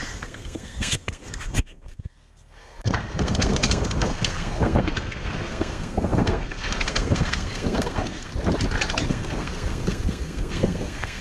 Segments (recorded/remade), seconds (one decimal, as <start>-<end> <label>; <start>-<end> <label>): 0.0-8.3 remade; 8.3-9.1 recorded; 9.1-11.2 remade